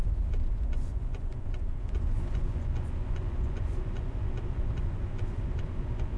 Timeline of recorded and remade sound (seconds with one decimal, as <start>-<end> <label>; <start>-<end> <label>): 0.0-6.2 remade